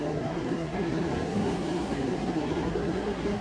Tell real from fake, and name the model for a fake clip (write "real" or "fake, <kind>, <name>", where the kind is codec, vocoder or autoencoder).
fake, codec, SNAC